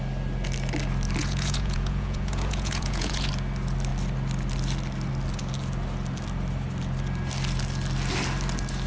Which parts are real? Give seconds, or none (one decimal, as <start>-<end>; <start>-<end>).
0.0-1.2; 3.3-8.9

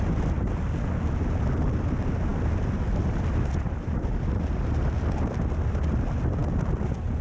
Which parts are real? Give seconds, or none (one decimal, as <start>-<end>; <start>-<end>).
0.0-7.2